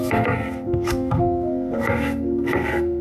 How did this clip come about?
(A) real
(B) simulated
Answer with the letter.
B